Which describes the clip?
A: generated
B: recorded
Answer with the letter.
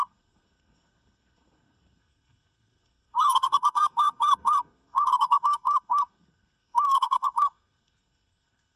A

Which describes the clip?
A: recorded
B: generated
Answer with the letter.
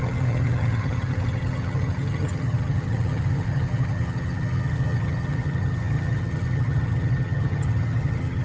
B